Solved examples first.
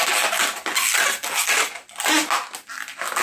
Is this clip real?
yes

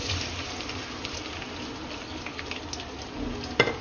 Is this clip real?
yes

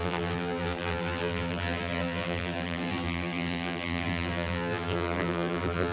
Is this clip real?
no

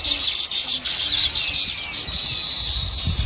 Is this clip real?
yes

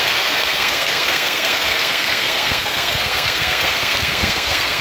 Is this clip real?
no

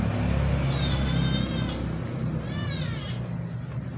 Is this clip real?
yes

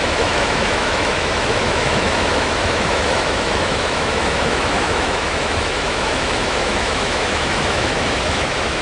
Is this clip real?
no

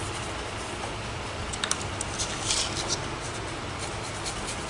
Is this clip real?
yes